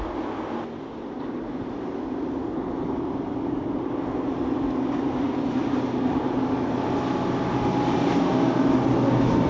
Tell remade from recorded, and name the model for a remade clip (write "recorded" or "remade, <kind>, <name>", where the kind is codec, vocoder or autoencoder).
recorded